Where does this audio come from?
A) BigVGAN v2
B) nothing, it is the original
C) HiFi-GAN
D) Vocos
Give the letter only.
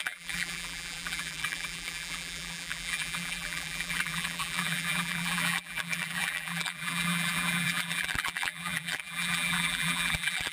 A